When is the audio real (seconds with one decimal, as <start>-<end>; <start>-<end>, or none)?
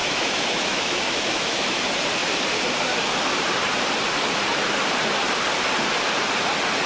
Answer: 1.8-6.9